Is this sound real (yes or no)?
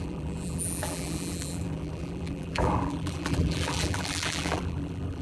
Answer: no